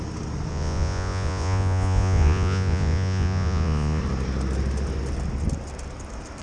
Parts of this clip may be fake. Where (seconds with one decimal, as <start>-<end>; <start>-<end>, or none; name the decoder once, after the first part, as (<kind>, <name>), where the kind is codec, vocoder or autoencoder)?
0.5-4.0 (vocoder, Vocos)